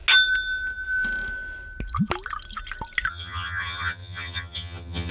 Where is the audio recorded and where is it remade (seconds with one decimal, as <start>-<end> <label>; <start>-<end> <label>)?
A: 0.0-3.1 recorded; 3.1-5.1 remade